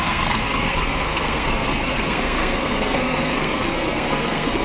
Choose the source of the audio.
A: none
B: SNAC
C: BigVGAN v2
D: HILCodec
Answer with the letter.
B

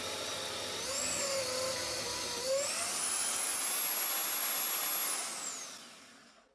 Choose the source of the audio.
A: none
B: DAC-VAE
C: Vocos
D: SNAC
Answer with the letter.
A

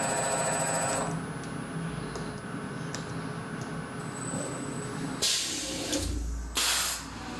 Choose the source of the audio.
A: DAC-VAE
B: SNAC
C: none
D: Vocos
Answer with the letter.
C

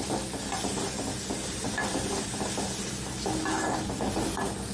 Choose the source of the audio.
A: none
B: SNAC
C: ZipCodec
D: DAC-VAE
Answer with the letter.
A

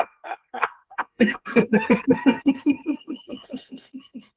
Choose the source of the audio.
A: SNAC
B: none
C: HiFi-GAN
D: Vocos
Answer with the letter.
A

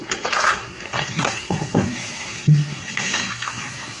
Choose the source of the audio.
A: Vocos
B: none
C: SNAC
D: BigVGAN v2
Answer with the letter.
C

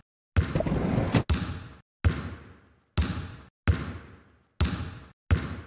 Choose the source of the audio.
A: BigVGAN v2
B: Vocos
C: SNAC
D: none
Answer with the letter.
D